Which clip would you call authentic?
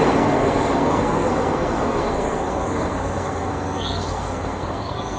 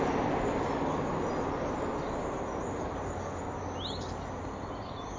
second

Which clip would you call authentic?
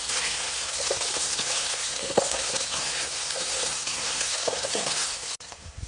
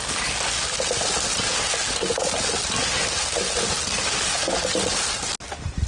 second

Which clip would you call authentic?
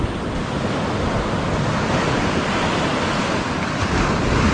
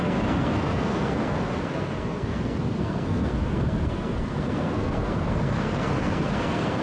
first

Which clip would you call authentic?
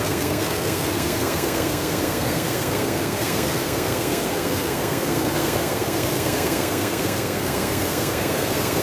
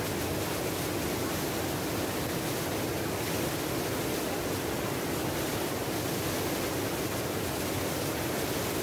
second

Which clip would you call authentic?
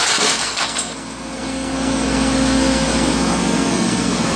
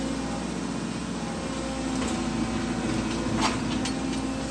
second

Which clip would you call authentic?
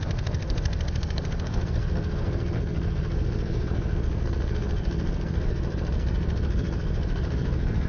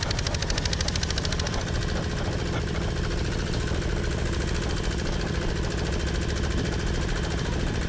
second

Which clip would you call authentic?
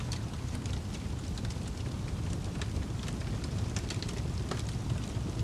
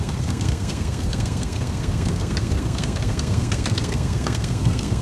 first